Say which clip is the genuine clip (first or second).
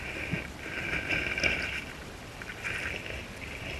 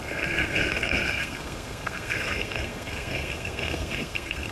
first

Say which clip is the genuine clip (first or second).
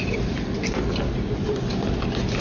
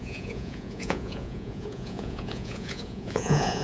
first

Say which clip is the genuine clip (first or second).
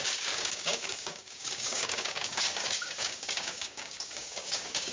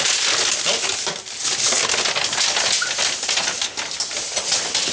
second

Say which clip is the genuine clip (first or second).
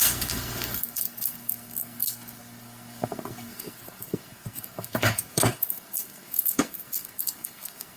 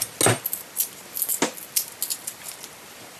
second